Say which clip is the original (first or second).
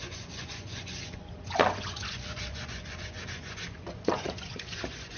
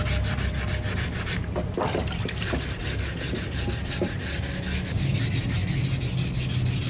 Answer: second